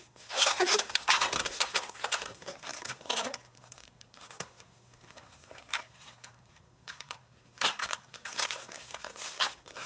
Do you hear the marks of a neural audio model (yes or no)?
yes